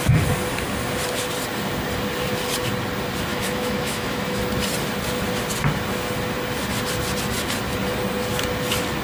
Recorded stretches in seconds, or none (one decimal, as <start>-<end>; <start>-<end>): 0.0-3.3; 4.4-9.0